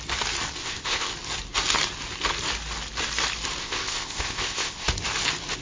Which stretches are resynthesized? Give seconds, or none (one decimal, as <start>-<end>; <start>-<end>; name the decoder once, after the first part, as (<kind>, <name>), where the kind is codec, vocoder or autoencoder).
0.6-1.1 (codec, ZipCodec); 3.6-4.9